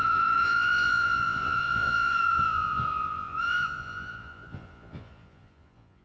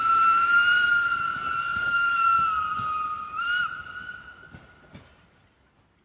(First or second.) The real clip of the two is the second